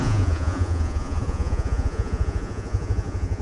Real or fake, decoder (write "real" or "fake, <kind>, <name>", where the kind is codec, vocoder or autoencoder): fake, vocoder, Vocos